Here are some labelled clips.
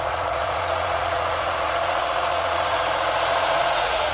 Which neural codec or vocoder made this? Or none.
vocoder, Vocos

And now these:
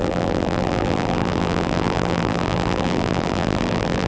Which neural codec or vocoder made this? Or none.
vocoder, BigVGAN v2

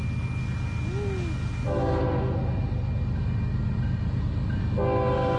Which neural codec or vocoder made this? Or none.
none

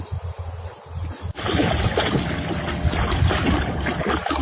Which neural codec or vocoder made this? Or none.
none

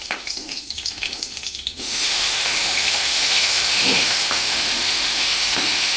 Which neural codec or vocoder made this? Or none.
autoencoder, DAC-VAE